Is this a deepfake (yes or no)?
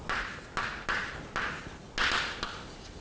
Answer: no